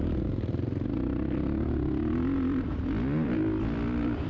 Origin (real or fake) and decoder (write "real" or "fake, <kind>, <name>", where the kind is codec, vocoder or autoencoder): real